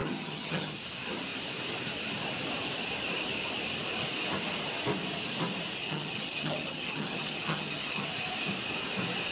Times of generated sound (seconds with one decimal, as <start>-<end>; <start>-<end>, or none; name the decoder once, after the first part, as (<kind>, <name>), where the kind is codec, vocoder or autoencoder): 0.0-0.8 (vocoder, HiFi-GAN); 5.8-8.1